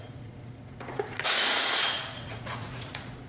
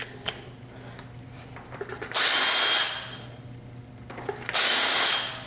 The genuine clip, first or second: second